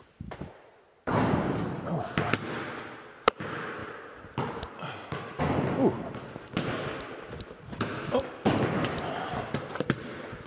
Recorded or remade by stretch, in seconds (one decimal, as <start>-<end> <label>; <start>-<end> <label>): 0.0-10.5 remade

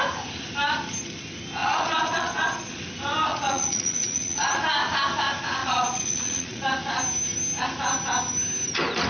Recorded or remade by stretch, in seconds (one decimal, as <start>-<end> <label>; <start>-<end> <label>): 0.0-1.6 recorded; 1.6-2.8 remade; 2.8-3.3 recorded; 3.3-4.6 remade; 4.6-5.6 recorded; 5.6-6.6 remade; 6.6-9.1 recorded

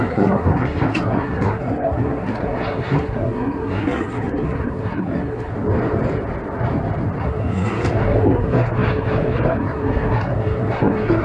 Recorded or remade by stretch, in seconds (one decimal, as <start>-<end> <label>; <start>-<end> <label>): 0.0-5.5 remade; 5.5-7.2 recorded; 7.2-11.2 remade